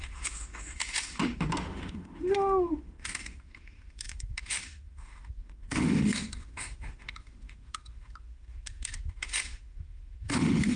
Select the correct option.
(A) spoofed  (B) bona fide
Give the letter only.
A